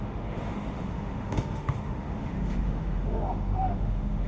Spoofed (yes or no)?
yes